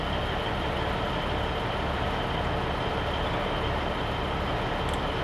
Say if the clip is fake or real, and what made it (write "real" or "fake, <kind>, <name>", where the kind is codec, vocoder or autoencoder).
real